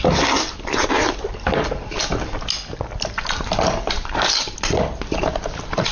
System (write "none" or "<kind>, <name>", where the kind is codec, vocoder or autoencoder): none